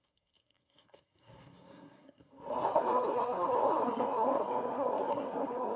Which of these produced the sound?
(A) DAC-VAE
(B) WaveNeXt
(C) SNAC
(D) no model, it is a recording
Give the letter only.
C